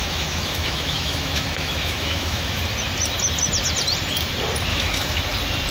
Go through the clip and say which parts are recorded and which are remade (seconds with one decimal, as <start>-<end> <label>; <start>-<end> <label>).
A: 0.0-2.6 remade; 2.6-4.7 recorded; 4.7-5.2 remade; 5.2-5.7 recorded